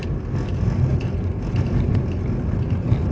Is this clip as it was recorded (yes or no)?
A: yes